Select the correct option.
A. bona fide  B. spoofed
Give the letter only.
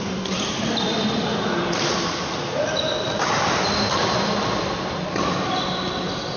A